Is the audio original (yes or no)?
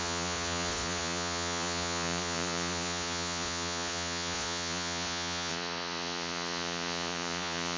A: no